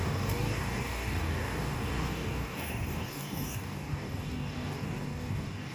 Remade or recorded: remade